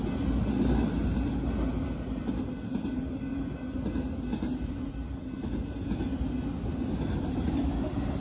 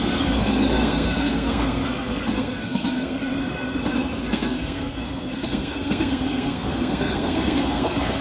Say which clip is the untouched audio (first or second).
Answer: first